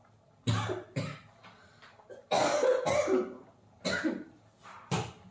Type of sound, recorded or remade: recorded